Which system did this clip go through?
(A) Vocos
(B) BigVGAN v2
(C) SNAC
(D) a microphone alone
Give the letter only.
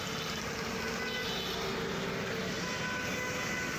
D